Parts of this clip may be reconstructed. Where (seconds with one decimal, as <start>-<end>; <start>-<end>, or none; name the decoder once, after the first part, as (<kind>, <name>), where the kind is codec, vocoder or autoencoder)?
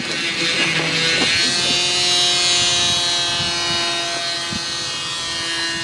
none